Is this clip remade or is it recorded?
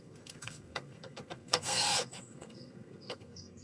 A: remade